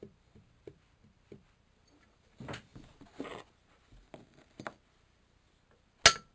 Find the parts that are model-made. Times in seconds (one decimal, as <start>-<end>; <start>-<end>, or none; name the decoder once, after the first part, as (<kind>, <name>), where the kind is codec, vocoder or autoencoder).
none